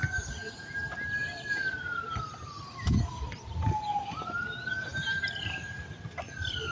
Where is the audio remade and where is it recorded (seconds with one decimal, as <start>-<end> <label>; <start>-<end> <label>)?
0.0-6.7 recorded